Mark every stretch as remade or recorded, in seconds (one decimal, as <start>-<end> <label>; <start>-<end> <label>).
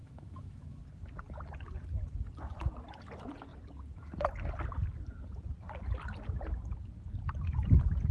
0.0-0.8 remade; 0.8-8.1 recorded